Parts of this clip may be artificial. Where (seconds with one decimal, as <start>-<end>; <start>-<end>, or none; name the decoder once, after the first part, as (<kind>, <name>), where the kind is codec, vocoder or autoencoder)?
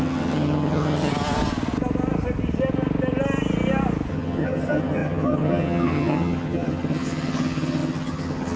0.0-1.1 (vocoder, HiFi-GAN); 4.1-8.6